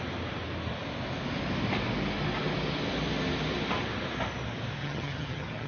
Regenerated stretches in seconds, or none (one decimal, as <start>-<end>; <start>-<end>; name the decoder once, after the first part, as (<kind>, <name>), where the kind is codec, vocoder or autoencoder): 4.8-5.7 (vocoder, HiFi-GAN)